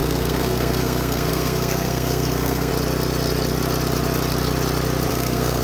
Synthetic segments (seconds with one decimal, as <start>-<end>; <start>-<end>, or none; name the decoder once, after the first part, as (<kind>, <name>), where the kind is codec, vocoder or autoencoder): 0.0-2.7 (codec, SNAC); 5.1-5.6